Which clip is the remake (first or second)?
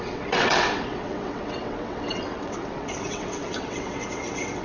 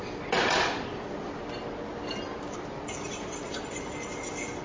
first